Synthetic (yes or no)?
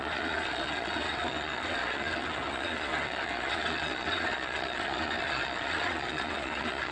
yes